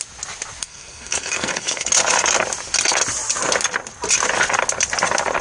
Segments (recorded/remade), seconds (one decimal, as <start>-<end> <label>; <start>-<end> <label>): 0.0-0.6 recorded; 0.6-1.9 remade; 1.9-5.4 recorded